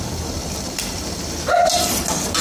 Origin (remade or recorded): recorded